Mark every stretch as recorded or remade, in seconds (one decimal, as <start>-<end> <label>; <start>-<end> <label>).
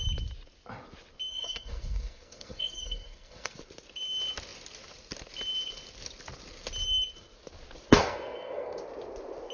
0.0-1.3 recorded; 1.3-3.6 remade; 3.6-7.9 recorded; 7.9-8.8 remade; 8.8-9.5 recorded